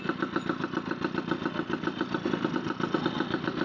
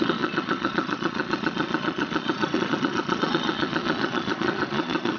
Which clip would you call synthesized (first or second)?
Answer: second